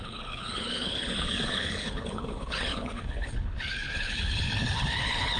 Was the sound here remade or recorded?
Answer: remade